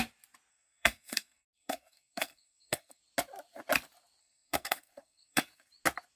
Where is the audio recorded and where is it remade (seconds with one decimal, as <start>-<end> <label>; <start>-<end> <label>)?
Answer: 0.0-0.5 recorded; 0.5-3.0 remade; 3.0-4.2 recorded; 4.2-5.7 remade; 5.7-6.2 recorded